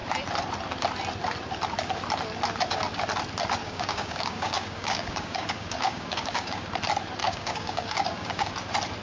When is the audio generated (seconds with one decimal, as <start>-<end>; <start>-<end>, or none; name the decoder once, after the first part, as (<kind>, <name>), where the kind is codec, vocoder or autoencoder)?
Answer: 3.6-6.6 (codec, DAC); 7.2-8.5